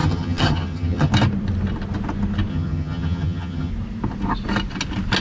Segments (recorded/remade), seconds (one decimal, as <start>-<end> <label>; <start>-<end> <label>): 0.0-1.1 remade; 1.1-2.5 recorded; 2.5-3.7 remade; 3.7-5.2 recorded